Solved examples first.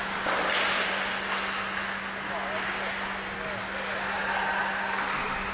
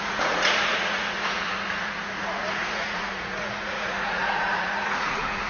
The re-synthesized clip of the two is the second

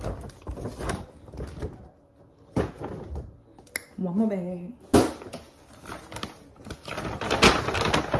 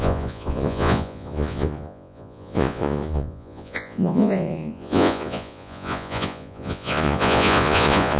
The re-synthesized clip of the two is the second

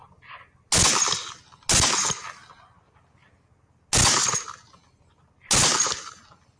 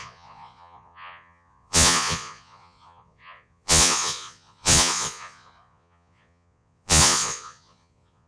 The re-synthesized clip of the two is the second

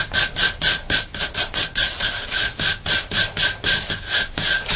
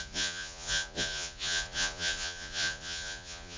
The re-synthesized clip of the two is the second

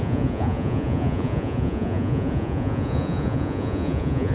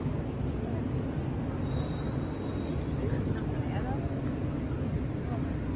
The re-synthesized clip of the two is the first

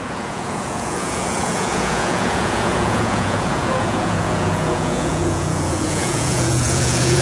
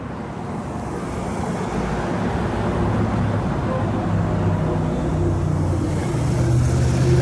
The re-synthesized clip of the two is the first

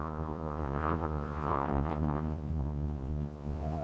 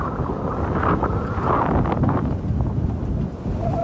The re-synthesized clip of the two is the first